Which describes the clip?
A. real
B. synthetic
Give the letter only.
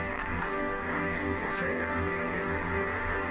B